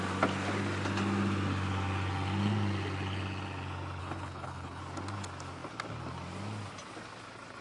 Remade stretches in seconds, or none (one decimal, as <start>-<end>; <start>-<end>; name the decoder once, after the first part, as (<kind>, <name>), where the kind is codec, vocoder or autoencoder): 4.0-4.8 (codec, HILCodec)